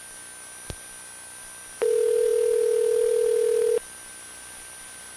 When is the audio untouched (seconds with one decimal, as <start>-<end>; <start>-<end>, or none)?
0.0-5.2